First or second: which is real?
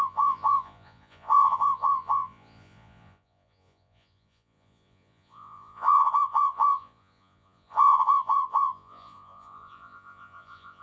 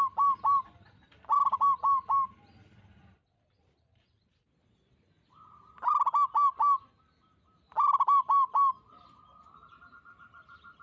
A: second